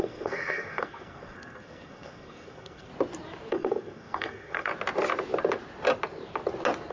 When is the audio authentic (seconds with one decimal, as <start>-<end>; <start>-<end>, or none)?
2.9-3.5; 4.7-6.9